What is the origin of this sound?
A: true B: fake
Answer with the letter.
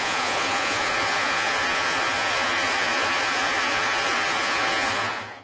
B